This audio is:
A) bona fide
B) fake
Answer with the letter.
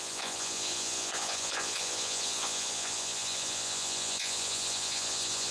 B